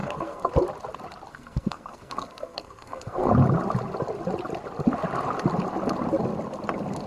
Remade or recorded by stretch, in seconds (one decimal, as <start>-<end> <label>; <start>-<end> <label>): 0.0-0.5 remade; 0.5-1.3 recorded; 1.3-3.3 remade; 3.3-7.1 recorded